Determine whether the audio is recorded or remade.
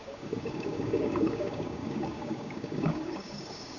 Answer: remade